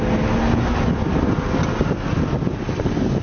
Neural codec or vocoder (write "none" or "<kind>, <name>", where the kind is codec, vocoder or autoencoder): none